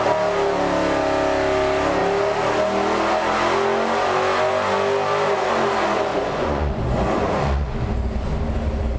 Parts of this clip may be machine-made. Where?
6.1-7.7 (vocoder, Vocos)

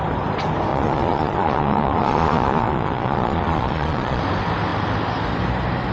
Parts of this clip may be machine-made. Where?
0.7-4.2 (vocoder, Vocos)

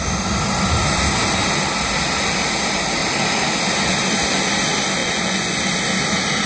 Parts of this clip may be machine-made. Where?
5.0-5.6 (vocoder, Vocos)

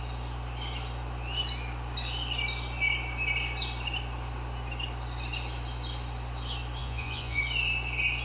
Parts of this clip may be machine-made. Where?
6.8-7.4 (vocoder, Vocos)